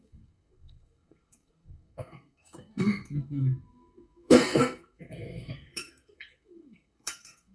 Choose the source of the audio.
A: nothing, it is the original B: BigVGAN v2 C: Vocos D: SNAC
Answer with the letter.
D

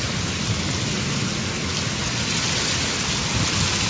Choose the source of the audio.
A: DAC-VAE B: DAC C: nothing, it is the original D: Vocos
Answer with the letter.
C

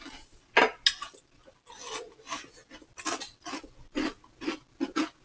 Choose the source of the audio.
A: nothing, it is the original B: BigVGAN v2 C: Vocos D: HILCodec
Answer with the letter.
A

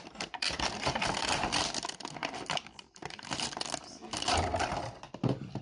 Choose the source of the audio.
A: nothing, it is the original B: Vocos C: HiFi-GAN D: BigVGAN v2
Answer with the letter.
D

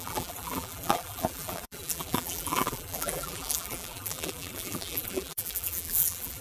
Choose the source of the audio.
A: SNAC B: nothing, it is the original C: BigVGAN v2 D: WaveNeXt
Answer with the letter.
C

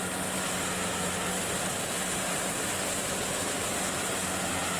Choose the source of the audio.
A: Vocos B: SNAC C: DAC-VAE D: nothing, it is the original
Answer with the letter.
D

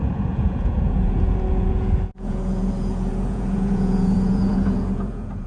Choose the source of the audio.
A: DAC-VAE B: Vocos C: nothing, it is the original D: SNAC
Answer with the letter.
B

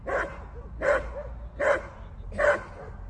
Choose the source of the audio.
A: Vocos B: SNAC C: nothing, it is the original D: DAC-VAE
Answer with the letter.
C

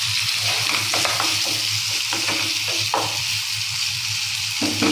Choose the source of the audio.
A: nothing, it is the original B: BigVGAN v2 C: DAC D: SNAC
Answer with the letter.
B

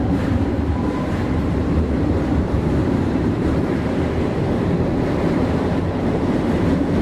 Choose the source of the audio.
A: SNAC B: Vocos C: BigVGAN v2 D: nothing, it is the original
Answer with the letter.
C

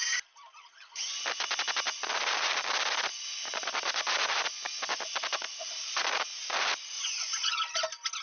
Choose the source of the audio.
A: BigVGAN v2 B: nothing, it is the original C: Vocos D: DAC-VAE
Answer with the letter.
B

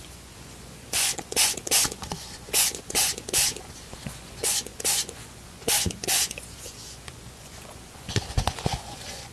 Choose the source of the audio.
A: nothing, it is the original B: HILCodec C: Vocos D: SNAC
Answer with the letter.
C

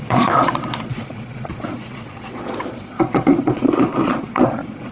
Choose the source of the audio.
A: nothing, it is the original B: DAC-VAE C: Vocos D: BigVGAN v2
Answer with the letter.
C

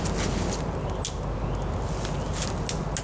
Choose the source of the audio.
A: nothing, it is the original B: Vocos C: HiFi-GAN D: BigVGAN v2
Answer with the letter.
A